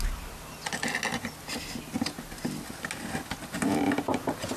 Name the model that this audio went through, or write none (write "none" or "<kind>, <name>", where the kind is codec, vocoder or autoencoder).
none